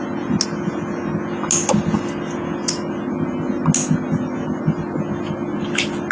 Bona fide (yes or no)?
yes